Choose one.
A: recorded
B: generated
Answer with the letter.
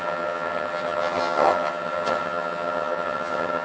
B